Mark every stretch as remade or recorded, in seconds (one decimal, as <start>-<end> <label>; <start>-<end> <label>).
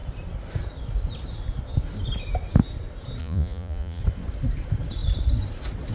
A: 0.0-3.2 recorded; 3.2-4.0 remade; 4.0-5.9 recorded